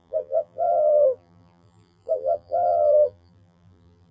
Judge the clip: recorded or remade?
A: remade